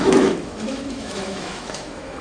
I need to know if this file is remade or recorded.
remade